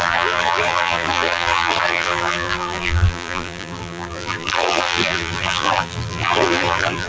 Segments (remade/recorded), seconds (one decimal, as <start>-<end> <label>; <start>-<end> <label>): 0.0-7.1 remade